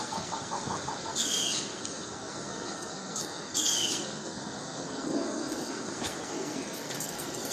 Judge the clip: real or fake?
fake